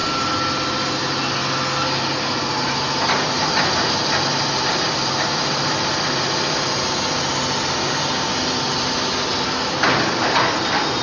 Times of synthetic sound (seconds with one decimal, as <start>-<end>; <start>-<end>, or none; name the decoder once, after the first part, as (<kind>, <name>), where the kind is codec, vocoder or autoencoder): none